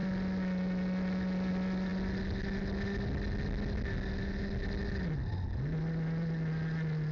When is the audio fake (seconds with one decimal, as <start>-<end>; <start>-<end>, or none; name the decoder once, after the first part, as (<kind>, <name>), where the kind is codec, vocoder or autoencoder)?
none